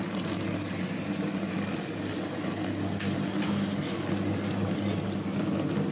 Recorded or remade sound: recorded